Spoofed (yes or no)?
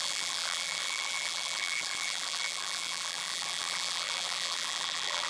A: yes